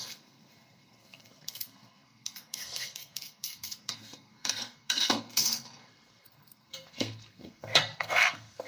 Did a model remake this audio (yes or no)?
yes